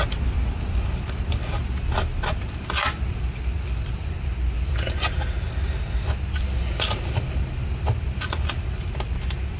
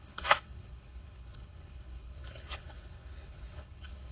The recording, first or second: first